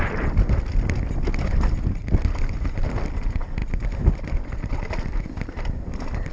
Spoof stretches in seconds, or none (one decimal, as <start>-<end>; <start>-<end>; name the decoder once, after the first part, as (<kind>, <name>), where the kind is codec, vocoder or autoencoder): 3.6-4.7 (vocoder, BigVGAN v2)